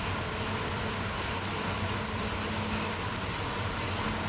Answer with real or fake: real